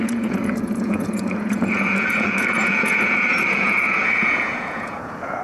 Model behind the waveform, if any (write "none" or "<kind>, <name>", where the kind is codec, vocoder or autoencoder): vocoder, Vocos